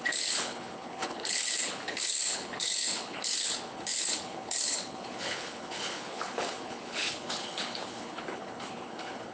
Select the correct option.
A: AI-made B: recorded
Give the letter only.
A